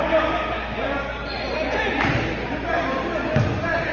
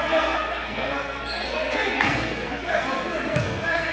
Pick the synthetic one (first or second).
second